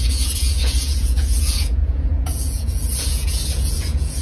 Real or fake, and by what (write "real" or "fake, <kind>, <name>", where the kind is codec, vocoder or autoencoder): fake, vocoder, Vocos